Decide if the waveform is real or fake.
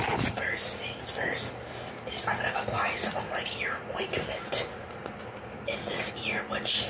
real